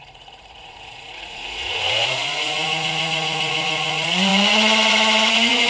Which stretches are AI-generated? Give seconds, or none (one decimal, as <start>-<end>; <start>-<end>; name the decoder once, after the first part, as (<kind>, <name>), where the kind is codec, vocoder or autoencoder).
0.0-5.7 (vocoder, Vocos)